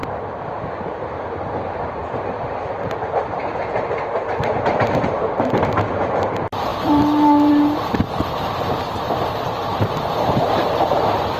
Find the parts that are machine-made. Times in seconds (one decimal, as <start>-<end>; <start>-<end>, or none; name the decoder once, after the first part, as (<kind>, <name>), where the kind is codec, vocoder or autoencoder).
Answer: 1.2-2.0 (vocoder, BigVGAN v2); 2.7-11.4